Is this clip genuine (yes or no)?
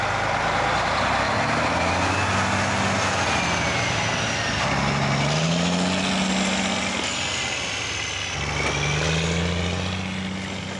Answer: yes